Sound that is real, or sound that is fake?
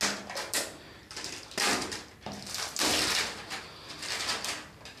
real